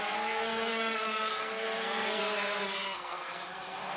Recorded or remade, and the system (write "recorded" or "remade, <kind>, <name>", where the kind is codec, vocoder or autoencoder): remade, codec, SNAC